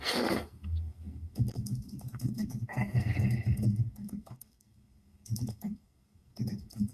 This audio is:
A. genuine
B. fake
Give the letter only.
B